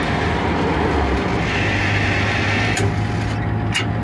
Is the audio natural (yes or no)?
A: yes